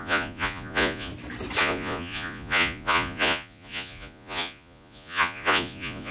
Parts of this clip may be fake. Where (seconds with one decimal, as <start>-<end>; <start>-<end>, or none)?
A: 0.0-1.1; 1.6-6.1